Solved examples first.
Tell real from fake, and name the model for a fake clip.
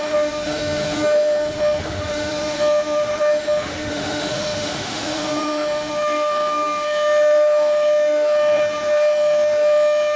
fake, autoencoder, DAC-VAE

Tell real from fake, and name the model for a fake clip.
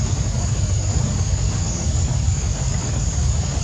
fake, codec, DAC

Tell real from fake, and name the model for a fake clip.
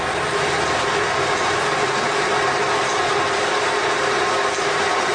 real